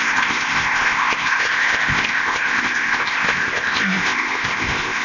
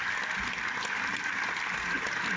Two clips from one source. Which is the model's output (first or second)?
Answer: first